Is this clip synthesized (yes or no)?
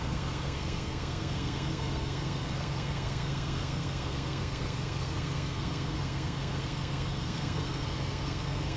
yes